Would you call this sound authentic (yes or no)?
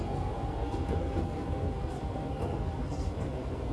no